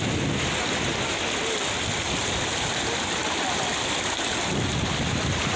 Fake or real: real